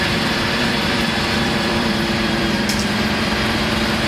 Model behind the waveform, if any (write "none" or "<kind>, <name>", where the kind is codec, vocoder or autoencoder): vocoder, BigVGAN v2